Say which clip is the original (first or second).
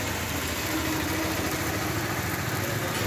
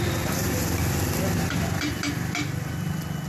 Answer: first